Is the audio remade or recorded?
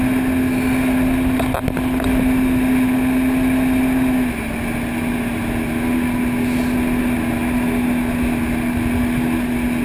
recorded